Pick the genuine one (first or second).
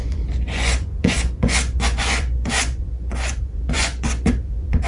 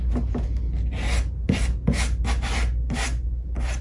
second